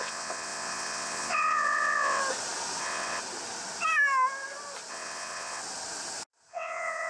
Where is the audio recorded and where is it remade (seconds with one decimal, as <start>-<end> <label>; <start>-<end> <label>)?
0.0-2.2 remade; 2.2-2.8 recorded; 2.8-3.2 remade; 3.2-4.9 recorded; 4.9-5.6 remade; 5.6-6.5 recorded; 6.5-7.1 remade